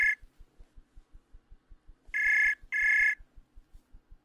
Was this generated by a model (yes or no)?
no